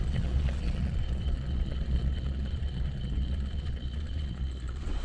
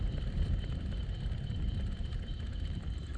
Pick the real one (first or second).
second